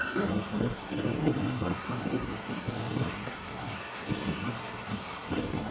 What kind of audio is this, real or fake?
fake